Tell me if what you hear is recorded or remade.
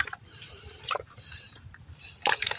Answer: remade